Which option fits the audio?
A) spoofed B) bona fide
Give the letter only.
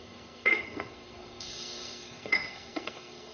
A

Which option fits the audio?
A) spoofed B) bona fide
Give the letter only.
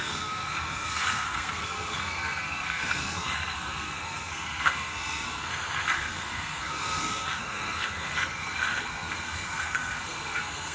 A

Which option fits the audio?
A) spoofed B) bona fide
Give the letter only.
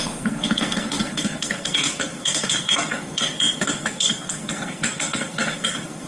A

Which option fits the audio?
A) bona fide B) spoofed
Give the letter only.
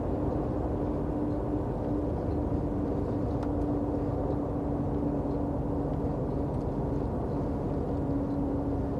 A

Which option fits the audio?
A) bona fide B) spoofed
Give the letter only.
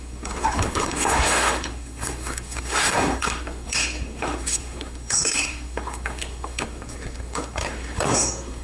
B